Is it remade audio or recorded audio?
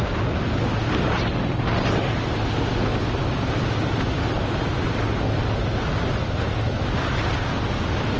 recorded